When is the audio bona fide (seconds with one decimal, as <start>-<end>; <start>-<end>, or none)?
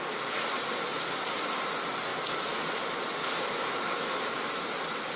0.0-5.2